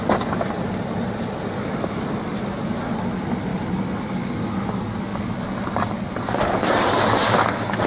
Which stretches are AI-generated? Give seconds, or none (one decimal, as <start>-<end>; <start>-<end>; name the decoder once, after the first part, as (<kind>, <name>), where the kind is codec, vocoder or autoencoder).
3.5-4.1 (vocoder, BigVGAN v2)